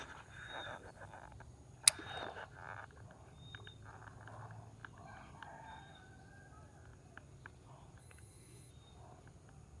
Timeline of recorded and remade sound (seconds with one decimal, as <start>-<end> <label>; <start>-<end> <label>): 0.0-8.0 recorded; 8.0-8.7 remade; 8.7-9.8 recorded